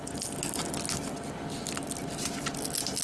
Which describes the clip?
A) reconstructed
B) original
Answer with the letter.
B